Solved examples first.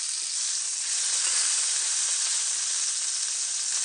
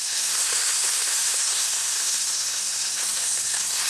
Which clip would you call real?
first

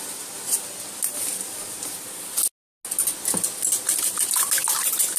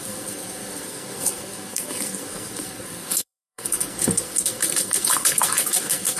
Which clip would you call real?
first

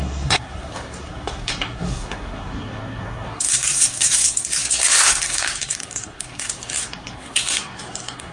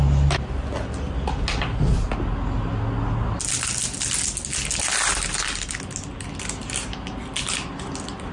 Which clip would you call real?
second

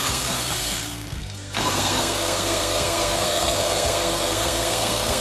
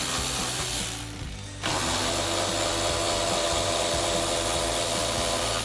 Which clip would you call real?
second